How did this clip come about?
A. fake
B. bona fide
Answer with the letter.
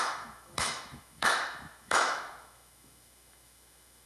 A